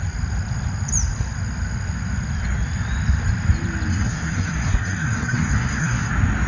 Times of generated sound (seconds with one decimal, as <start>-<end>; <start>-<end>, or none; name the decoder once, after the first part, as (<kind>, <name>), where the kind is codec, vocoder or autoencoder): 3.9-6.1 (codec, SNAC)